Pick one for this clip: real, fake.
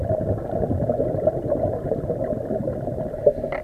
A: real